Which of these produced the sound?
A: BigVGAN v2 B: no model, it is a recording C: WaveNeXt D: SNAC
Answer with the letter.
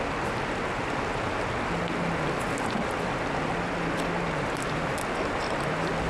B